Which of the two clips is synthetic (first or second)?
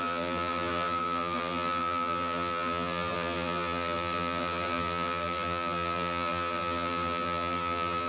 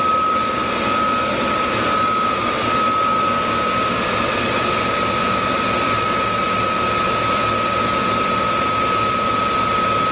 first